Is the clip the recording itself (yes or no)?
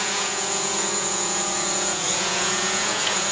no